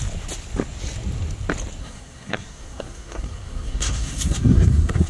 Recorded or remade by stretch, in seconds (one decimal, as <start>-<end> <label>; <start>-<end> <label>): 0.0-1.8 recorded; 1.8-5.1 remade